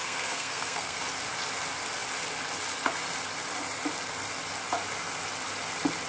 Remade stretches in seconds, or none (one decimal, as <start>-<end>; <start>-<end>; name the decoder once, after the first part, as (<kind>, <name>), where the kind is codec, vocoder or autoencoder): 0.0-1.0 (codec, SNAC)